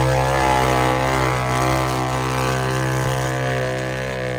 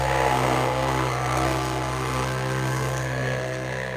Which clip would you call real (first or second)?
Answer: first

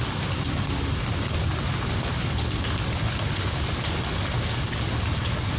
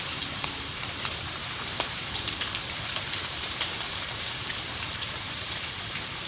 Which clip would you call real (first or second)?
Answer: first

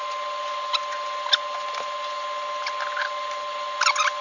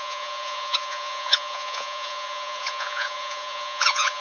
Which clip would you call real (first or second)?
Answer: first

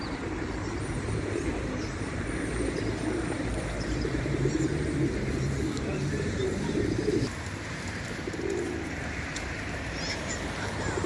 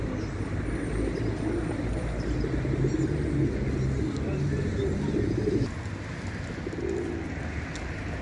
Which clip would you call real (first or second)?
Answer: second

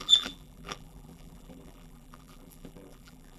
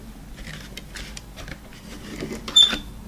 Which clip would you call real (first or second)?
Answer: second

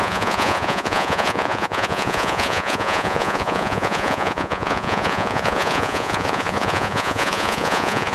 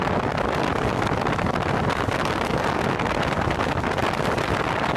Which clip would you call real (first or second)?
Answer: second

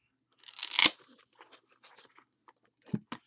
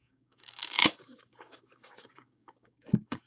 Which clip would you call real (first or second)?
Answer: first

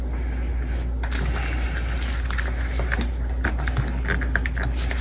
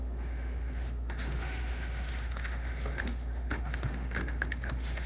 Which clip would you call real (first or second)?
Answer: first